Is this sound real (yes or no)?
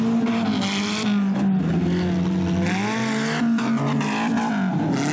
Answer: yes